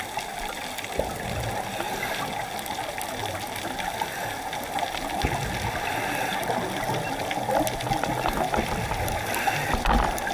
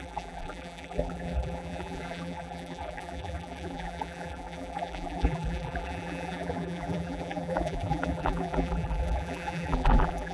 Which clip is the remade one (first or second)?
second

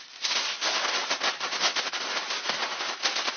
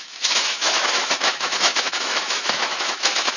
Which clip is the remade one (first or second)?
second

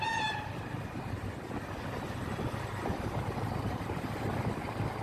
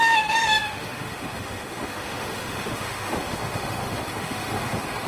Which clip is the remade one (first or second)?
second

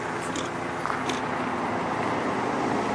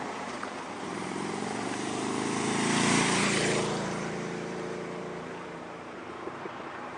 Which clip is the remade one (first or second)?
second